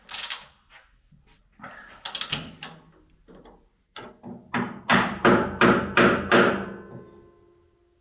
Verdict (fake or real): real